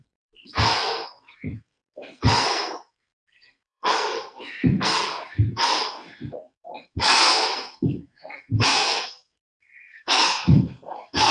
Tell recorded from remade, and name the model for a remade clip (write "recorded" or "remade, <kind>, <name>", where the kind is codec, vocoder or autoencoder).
remade, codec, SNAC